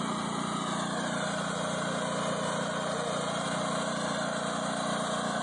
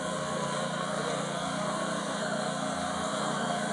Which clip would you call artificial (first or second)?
second